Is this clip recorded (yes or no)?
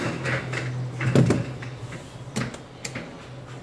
yes